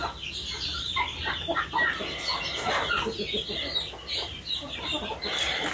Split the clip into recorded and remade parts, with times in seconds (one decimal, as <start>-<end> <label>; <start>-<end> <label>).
0.0-5.7 recorded